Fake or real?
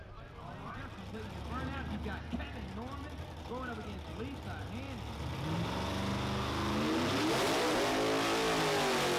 real